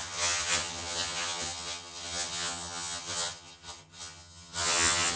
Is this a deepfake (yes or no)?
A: yes